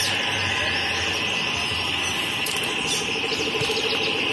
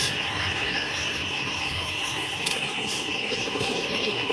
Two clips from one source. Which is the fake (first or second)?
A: second